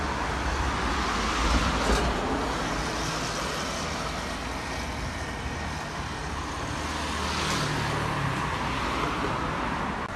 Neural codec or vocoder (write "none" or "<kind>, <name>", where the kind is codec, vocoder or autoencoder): none